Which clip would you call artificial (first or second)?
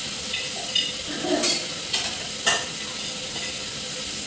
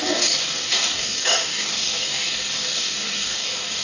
second